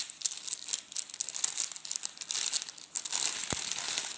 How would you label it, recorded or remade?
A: recorded